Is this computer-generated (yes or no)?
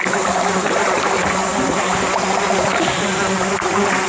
no